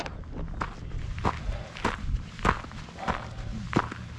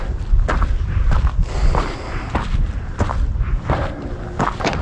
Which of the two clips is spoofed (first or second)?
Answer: second